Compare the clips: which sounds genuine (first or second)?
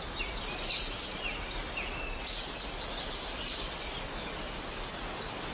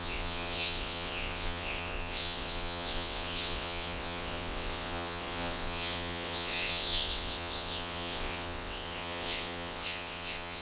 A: first